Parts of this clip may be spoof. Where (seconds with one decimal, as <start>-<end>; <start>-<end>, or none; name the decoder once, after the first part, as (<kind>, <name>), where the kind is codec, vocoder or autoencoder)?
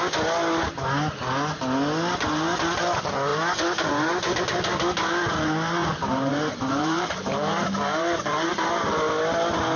5.8-8.5 (vocoder, BigVGAN v2)